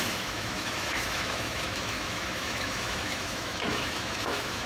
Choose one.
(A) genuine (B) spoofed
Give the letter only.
B